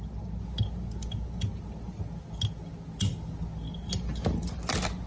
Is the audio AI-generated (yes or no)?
no